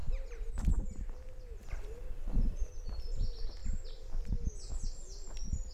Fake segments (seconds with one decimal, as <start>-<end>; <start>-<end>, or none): 1.6-2.7